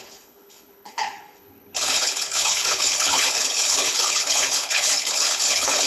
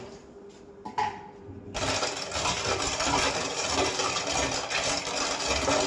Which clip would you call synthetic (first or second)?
first